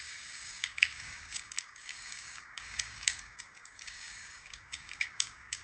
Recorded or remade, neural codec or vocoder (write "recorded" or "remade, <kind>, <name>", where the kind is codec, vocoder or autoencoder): remade, codec, DAC